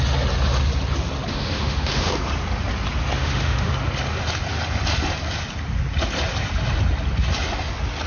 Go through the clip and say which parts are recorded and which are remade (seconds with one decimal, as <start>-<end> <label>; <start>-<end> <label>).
0.0-1.3 recorded; 1.3-2.1 remade; 2.1-3.2 recorded; 3.2-3.7 remade; 3.7-8.1 recorded